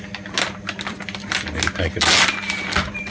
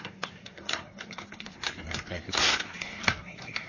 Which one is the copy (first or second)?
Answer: second